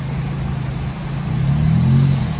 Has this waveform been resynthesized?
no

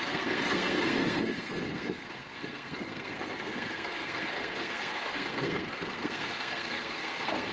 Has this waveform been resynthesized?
yes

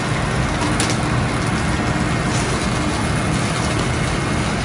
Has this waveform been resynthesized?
no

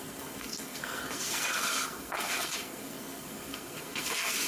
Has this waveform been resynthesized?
yes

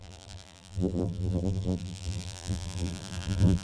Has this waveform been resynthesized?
yes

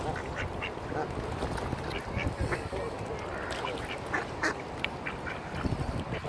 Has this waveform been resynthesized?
no